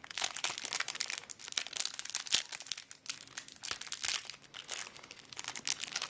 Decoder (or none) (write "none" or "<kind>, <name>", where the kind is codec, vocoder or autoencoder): none